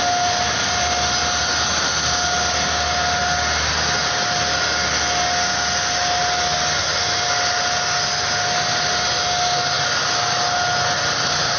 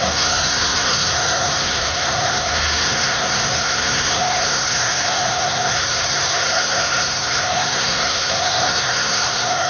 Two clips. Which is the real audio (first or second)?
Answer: first